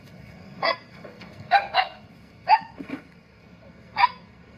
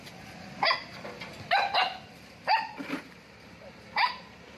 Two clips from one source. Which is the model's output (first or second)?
first